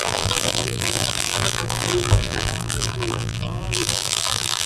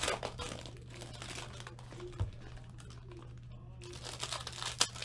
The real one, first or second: second